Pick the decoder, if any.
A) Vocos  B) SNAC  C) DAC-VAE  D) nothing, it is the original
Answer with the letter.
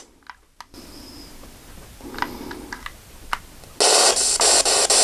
D